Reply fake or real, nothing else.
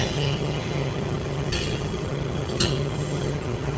fake